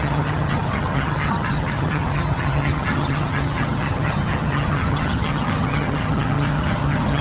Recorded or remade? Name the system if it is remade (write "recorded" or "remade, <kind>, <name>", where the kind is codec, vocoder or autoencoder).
remade, vocoder, HiFi-GAN